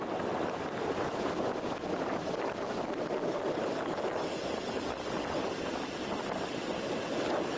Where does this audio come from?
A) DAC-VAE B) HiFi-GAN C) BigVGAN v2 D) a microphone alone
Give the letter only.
D